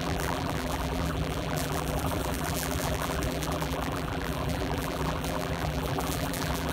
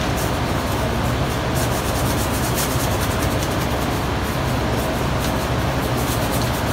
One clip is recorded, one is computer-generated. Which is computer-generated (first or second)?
first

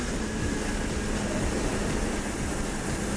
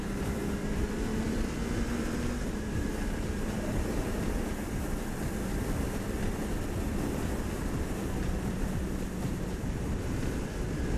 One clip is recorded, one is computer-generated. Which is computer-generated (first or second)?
second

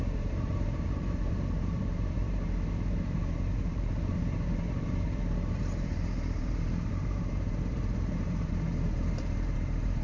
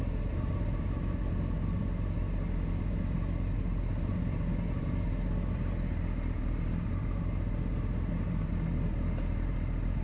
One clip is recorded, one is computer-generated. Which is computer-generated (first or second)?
first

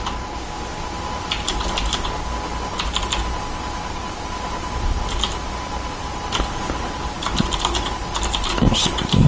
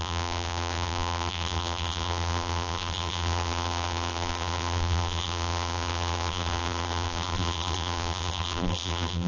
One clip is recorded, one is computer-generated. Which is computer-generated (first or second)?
second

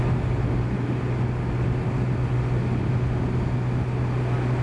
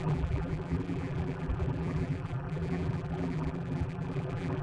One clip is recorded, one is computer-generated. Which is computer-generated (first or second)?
second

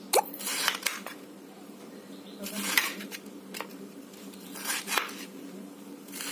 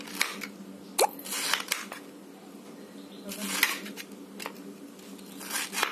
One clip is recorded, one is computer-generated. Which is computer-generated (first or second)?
first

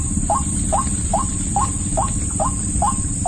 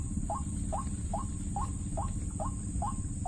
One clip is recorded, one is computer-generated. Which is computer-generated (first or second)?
first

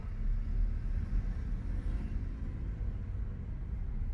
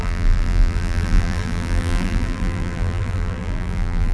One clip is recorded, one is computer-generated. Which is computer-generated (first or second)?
second